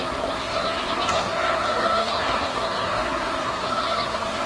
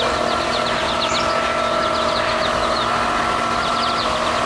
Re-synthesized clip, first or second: first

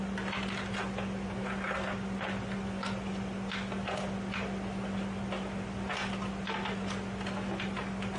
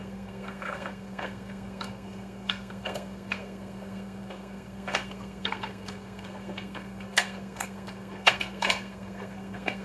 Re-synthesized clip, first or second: second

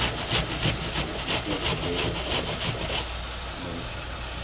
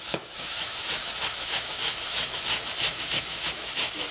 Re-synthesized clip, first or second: second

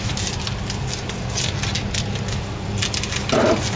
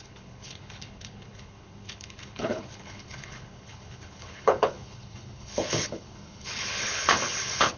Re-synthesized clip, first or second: second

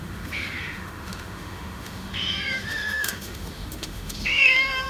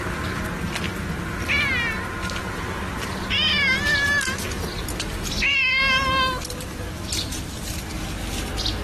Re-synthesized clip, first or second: first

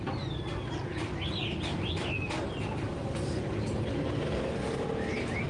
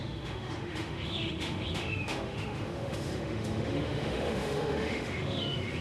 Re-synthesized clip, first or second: second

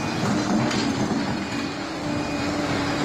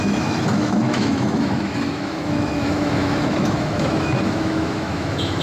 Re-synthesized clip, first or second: second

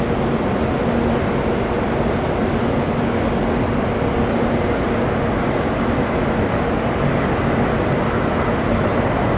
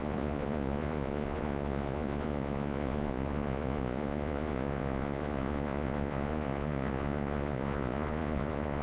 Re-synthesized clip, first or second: second